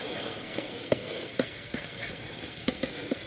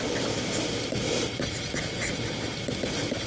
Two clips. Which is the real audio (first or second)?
second